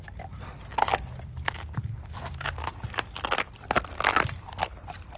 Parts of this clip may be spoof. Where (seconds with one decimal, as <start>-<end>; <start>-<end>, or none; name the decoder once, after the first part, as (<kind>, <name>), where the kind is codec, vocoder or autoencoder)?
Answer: 0.0-5.2 (vocoder, BigVGAN v2)